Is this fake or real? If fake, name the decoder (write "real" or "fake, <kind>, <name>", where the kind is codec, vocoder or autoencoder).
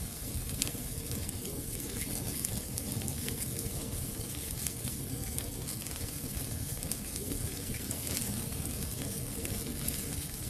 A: fake, codec, SNAC